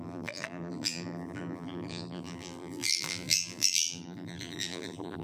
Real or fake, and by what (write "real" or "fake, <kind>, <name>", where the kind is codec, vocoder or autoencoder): fake, vocoder, BigVGAN v2